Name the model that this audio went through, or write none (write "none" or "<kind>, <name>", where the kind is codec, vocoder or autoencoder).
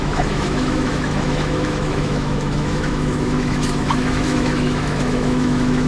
autoencoder, DAC-VAE